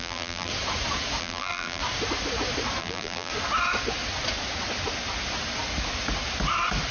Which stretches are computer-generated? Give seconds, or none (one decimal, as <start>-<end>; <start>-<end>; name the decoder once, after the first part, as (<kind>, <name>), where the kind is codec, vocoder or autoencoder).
0.0-0.5 (vocoder, BigVGAN v2); 1.2-1.8; 2.8-3.3